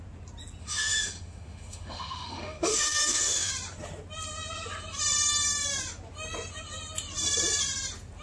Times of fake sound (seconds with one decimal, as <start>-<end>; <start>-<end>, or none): 0.6-3.5